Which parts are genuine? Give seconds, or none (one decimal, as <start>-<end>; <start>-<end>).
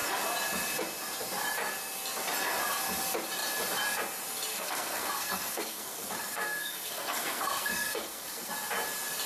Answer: 0.0-4.5; 8.5-9.3